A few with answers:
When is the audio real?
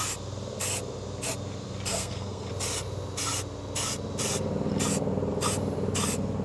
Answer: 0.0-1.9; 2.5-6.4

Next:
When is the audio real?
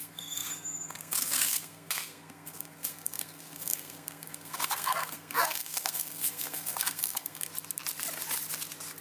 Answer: 7.5-9.0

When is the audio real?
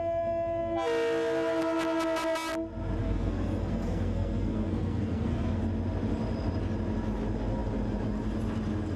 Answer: 0.0-3.0; 5.6-9.0